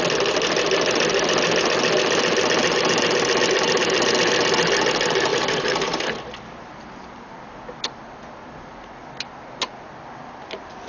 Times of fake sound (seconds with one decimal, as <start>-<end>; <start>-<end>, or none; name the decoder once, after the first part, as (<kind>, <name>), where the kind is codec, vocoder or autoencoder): 5.3-6.7 (vocoder, BigVGAN v2)